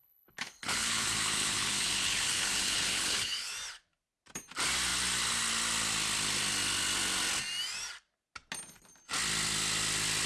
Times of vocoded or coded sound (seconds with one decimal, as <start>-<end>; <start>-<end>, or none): 0.0-3.5